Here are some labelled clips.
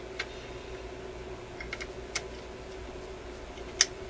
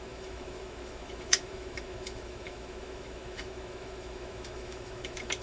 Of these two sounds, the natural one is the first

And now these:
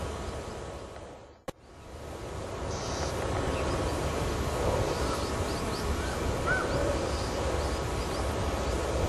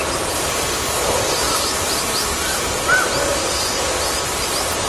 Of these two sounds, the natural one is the first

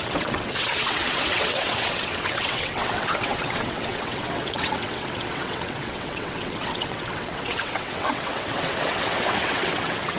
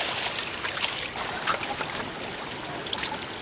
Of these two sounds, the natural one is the second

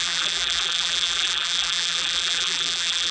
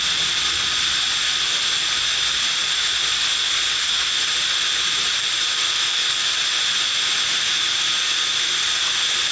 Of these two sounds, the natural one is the second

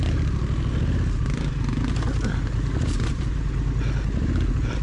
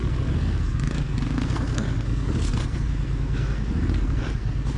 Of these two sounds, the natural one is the first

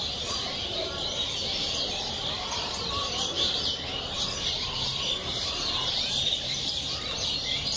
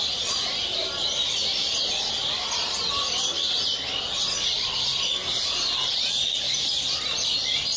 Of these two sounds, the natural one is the second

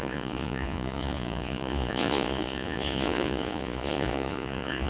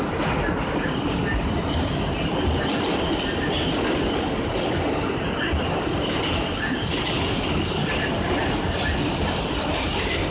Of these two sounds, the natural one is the second